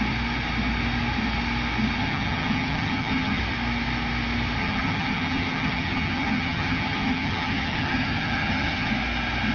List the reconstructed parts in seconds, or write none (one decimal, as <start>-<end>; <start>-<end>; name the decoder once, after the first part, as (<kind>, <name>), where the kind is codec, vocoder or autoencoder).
2.0-3.4 (vocoder, HiFi-GAN); 4.6-8.9

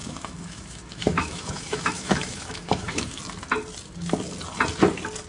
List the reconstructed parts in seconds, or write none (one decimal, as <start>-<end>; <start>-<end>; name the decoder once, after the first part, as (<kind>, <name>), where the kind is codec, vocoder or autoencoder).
0.0-3.2 (autoencoder, DAC-VAE)

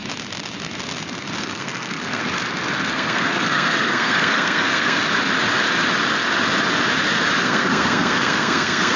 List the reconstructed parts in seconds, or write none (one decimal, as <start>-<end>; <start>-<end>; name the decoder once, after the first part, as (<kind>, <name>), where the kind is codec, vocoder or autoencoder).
1.4-2.2 (codec, SNAC); 2.9-5.0; 7.4-9.0

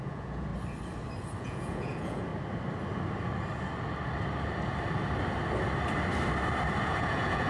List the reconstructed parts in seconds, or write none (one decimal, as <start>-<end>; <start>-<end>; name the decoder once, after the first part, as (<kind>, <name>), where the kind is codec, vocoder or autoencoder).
0.0-0.5 (vocoder, Vocos); 1.4-2.3; 6.8-7.5

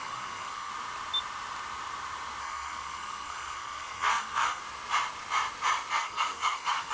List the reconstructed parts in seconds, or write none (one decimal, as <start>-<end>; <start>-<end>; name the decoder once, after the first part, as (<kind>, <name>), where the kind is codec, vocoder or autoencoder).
0.0-0.7 (codec, SNAC); 2.4-4.6; 5.9-6.9

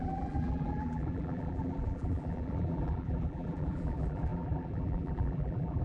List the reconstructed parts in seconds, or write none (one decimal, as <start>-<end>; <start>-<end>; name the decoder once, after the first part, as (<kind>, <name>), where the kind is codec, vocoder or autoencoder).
0.0-5.8 (vocoder, BigVGAN v2)

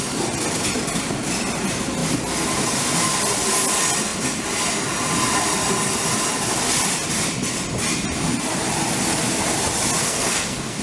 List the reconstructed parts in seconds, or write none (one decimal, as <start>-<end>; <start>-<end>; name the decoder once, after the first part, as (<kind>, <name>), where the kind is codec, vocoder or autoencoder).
10.0-10.8 (codec, SNAC)